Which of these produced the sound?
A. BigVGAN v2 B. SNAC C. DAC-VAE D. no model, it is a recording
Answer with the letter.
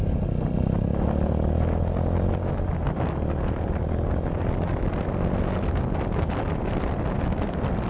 D